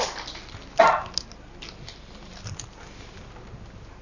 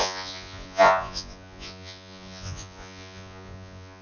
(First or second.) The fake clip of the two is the second